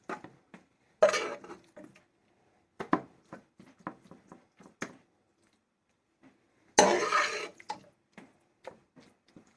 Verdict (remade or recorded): recorded